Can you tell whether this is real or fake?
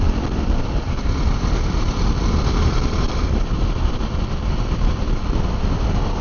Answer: real